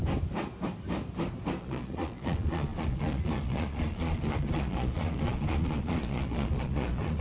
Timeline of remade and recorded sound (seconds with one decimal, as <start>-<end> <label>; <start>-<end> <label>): 0.0-1.6 recorded; 1.6-7.2 remade